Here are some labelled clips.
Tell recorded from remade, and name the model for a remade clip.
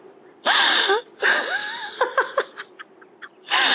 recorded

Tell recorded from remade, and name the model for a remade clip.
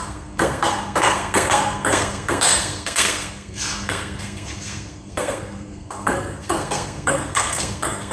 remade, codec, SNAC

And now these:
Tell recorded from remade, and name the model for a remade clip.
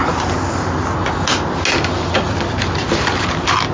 recorded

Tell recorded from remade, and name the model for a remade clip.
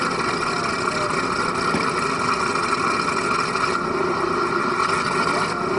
recorded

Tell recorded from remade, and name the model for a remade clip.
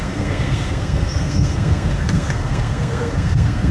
remade, codec, SNAC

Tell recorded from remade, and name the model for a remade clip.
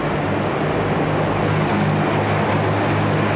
recorded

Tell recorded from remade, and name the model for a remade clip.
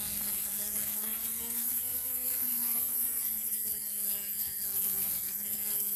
remade, codec, SNAC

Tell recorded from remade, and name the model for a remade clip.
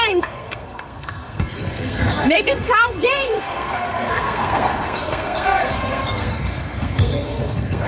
remade, codec, SNAC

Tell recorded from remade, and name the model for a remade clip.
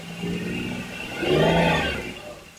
recorded